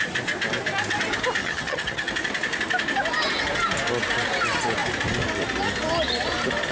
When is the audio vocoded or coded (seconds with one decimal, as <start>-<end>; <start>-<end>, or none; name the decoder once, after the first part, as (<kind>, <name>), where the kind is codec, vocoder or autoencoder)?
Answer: 1.4-2.1 (vocoder, HiFi-GAN)